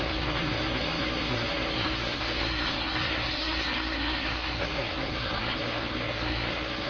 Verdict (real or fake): fake